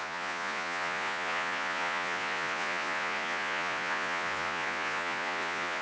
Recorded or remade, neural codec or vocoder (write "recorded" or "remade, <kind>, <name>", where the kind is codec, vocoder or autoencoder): remade, vocoder, Vocos